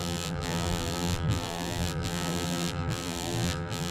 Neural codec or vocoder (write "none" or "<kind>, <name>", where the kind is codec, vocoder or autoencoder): vocoder, BigVGAN v2